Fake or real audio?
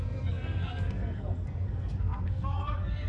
fake